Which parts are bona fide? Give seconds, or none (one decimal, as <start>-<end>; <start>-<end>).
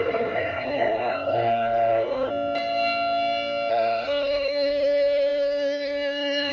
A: 2.3-3.7